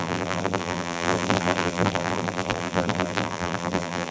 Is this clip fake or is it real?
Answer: fake